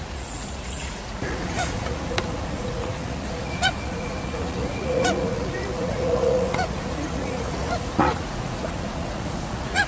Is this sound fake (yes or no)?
yes